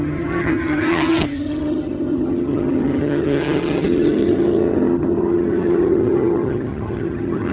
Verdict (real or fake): fake